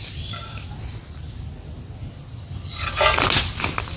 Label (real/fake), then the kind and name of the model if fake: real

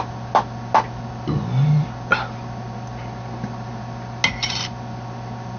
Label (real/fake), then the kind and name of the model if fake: real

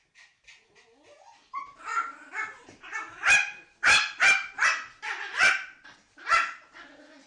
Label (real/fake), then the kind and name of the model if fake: real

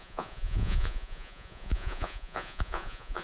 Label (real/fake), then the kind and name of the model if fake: fake, vocoder, Vocos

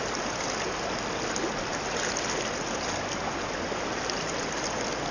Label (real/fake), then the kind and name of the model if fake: real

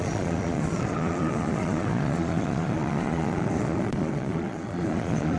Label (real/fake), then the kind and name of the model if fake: fake, vocoder, Vocos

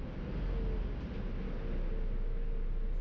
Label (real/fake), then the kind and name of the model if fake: real